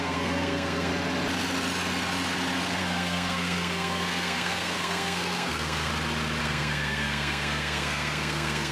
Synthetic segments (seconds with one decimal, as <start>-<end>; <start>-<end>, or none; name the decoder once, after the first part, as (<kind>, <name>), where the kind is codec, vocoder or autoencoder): 0.0-0.9 (codec, SNAC); 2.8-5.9; 6.4-8.7